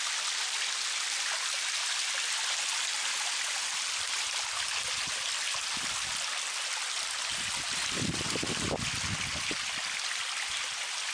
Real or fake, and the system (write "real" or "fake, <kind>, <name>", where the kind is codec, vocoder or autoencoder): real